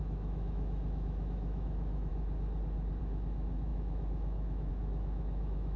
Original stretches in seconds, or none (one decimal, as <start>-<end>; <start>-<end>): 2.1-3.0